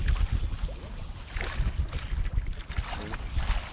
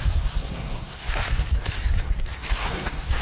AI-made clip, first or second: second